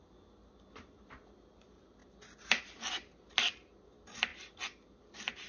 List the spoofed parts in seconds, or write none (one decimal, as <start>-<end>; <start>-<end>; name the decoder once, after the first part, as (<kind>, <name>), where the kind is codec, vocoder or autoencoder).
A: none